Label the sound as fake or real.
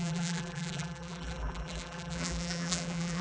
fake